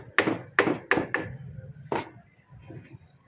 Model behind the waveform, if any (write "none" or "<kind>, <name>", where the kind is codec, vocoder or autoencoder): none